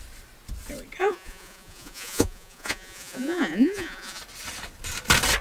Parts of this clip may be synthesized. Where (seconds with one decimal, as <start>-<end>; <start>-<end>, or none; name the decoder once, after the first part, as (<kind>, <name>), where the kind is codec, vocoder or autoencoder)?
1.0-4.2 (vocoder, Vocos)